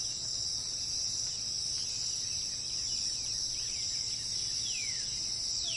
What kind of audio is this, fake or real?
real